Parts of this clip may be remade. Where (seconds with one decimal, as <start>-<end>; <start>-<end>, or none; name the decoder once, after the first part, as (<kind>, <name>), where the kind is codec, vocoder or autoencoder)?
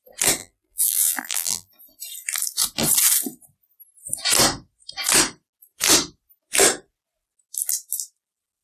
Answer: 0.4-1.8 (vocoder, BigVGAN v2)